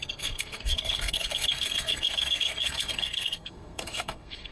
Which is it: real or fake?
fake